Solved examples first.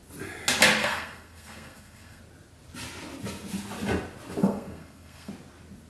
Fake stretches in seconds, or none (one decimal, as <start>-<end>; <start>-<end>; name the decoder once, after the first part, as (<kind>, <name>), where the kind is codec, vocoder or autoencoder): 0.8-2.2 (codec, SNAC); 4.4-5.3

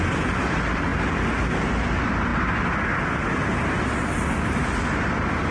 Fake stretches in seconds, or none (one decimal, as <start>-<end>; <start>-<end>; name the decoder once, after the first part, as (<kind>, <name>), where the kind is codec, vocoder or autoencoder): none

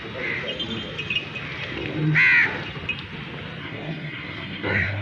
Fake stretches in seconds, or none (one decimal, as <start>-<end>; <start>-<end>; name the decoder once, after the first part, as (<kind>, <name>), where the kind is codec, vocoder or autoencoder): 3.6-5.0 (codec, SNAC)